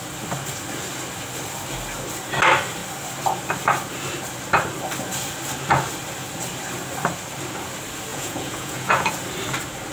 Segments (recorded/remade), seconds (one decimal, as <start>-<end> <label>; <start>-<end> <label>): 0.0-8.1 recorded; 8.1-9.1 remade; 9.1-9.9 recorded